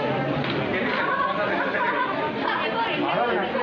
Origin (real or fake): real